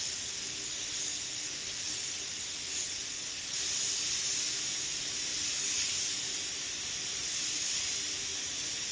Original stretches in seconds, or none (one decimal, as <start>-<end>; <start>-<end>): 0.0-1.1; 1.8-5.3; 6.1-7.2; 8.0-8.9